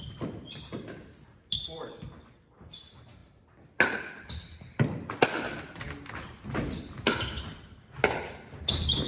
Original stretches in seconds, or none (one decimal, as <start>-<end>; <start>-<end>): 0.0-9.1